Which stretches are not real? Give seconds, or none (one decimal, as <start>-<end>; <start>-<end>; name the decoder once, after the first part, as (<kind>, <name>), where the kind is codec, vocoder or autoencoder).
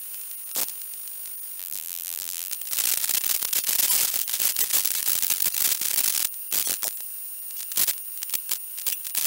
1.6-2.5 (vocoder, BigVGAN v2)